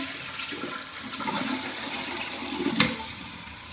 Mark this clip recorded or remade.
recorded